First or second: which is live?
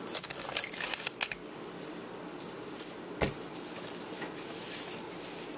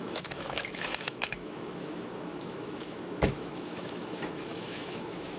first